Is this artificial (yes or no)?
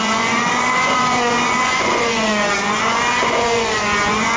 yes